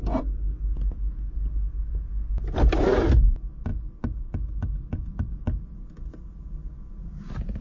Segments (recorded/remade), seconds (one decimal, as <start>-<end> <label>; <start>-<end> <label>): 0.0-7.6 recorded